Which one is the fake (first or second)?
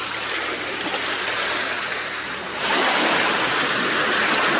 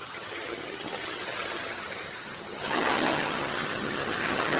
second